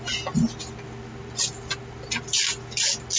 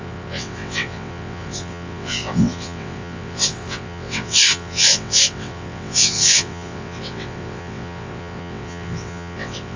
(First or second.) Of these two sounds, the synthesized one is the second